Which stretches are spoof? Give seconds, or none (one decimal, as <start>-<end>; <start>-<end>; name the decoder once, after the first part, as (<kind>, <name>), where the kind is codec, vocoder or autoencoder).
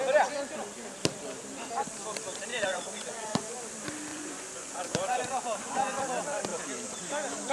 2.5-3.4 (vocoder, Vocos); 4.1-6.0